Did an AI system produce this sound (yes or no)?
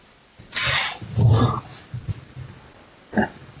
no